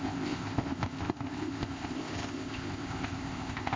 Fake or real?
fake